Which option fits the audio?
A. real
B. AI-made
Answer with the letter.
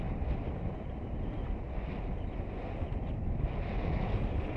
A